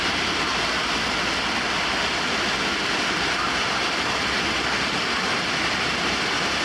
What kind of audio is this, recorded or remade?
recorded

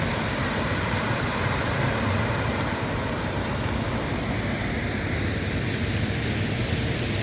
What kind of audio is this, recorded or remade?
recorded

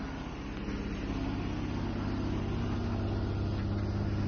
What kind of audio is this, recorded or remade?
recorded